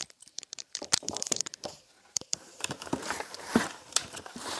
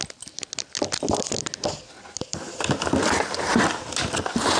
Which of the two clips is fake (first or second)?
first